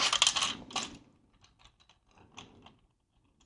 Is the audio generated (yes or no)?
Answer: no